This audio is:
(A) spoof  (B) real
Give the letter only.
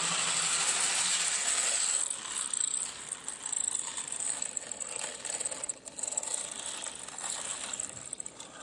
B